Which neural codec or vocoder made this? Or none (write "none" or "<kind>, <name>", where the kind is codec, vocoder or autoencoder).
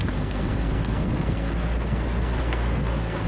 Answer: codec, SNAC